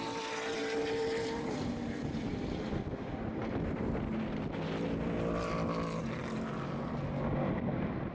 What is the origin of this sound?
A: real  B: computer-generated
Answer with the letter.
A